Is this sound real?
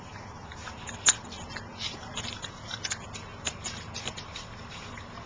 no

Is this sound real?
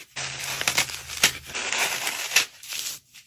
yes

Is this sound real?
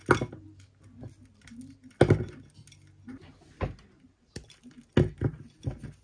yes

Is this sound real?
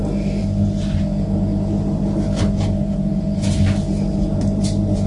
yes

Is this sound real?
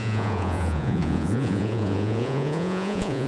no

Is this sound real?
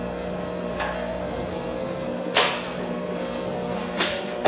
no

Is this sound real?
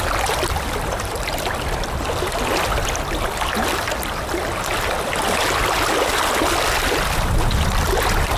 yes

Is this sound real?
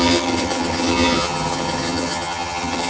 no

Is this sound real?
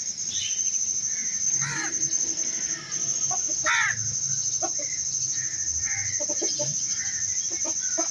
yes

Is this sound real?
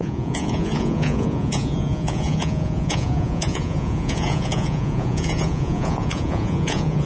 no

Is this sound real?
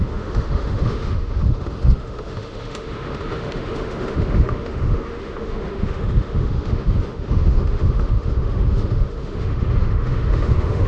no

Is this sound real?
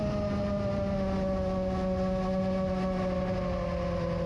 yes